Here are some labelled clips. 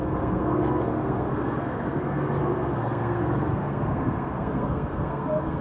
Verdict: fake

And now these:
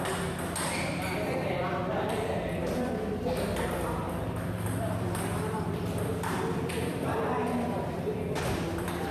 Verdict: fake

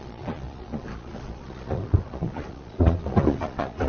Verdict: fake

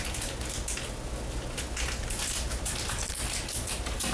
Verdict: real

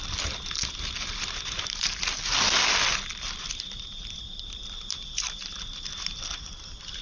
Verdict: real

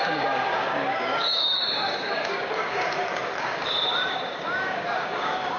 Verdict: fake